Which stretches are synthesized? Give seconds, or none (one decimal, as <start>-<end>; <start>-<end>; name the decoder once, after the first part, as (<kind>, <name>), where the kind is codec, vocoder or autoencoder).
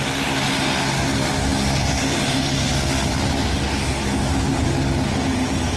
none